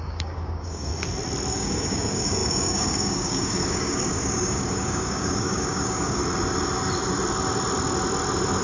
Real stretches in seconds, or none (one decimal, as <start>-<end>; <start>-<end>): 0.9-1.5; 6.2-8.6